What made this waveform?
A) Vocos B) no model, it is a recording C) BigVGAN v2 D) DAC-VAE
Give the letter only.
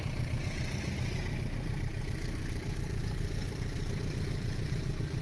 C